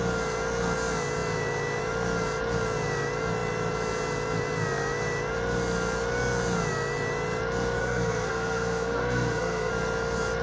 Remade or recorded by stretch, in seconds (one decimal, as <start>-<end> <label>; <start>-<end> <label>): 0.0-7.8 recorded; 7.8-9.7 remade; 9.7-10.4 recorded